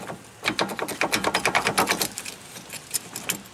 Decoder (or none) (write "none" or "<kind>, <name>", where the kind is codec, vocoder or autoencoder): none